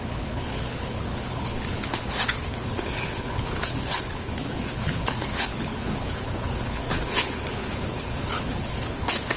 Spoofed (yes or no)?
yes